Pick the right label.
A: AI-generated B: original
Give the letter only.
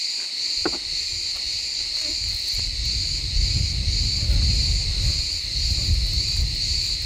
B